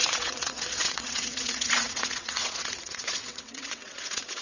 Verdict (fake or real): fake